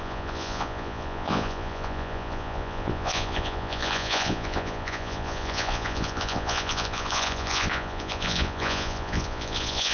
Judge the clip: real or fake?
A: fake